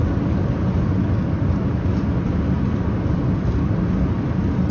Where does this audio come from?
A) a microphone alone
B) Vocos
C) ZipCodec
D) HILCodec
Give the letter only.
A